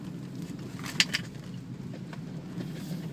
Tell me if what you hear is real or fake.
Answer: real